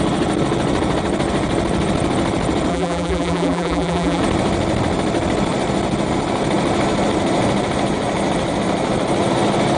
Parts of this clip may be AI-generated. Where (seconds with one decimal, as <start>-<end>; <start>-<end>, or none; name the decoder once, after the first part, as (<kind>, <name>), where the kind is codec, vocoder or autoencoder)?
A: 2.7-4.2 (vocoder, BigVGAN v2)